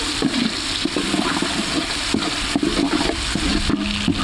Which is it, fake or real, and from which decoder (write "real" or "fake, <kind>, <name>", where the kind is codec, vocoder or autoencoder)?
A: real